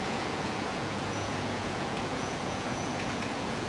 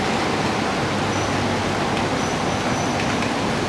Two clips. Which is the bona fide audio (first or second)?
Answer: second